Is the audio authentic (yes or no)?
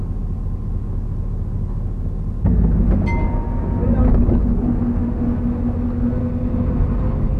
yes